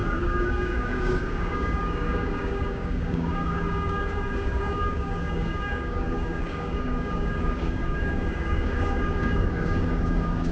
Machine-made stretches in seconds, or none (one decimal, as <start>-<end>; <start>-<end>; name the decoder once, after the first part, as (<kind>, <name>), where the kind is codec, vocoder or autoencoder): 0.0-10.5 (codec, DAC)